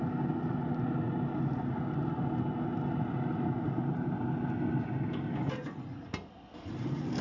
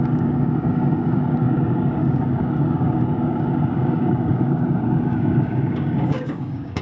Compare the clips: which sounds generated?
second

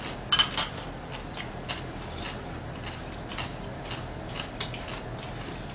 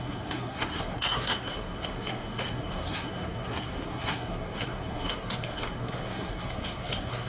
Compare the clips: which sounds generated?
second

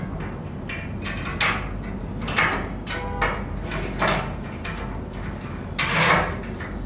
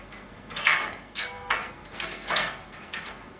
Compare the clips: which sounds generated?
second